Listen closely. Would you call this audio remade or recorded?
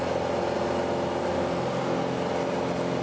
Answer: recorded